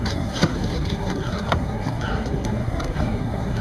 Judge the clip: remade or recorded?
remade